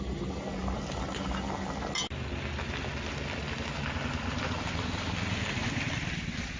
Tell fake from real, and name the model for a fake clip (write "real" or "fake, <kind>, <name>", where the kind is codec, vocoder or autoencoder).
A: real